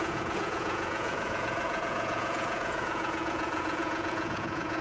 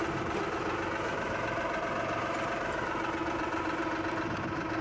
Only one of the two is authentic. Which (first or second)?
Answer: second